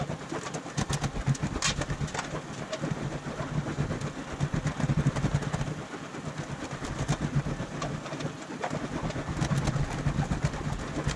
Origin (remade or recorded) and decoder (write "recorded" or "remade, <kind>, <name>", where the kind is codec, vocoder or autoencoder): recorded